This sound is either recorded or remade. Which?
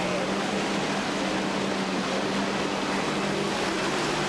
recorded